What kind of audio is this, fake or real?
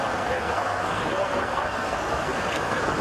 fake